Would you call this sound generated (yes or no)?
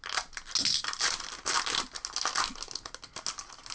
no